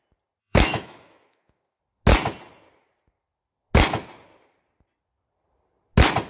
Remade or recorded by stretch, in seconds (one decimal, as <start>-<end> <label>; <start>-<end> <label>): 0.0-0.4 recorded; 0.4-1.8 remade; 1.8-6.3 recorded